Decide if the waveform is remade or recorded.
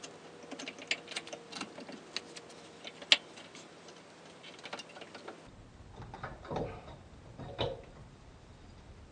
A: recorded